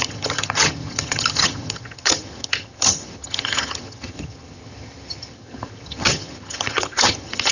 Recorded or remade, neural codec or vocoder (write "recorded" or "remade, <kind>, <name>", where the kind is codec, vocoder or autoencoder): remade, vocoder, HiFi-GAN